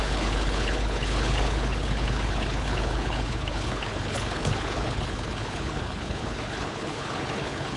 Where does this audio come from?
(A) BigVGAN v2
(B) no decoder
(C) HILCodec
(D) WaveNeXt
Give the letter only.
C